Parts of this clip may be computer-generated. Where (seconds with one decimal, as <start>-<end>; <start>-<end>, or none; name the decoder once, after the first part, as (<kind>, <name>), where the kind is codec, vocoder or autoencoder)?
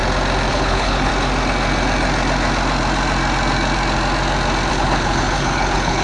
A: 0.5-1.1 (codec, HILCodec); 4.7-6.0